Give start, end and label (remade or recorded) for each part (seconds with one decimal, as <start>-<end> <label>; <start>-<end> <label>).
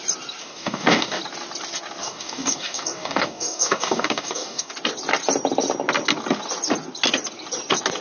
0.0-0.4 recorded; 0.4-1.2 remade; 1.2-2.0 recorded; 2.0-4.7 remade; 4.7-8.0 recorded